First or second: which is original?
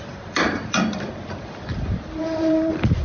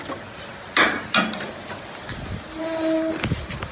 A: second